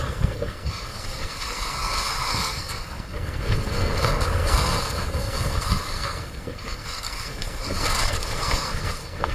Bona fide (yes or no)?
no